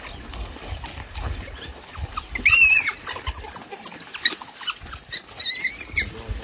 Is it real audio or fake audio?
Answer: real